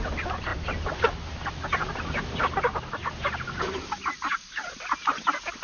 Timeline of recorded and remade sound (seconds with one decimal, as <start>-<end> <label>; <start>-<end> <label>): 0.0-5.6 recorded